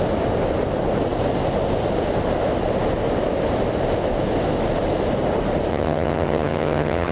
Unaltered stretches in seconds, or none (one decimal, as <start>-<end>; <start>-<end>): 0.0-5.7